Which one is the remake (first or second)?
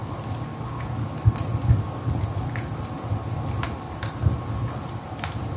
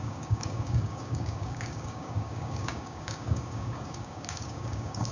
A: second